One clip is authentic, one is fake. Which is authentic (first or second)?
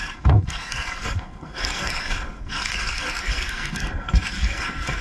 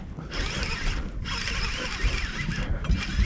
second